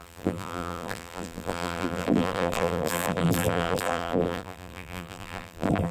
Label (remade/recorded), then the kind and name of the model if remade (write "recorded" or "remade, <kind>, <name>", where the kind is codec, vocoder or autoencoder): remade, vocoder, BigVGAN v2